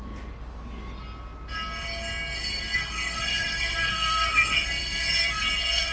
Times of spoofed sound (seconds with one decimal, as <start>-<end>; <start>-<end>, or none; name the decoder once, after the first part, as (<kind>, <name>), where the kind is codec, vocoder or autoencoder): 2.4-5.9 (codec, SNAC)